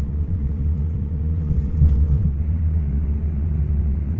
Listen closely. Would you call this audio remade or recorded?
remade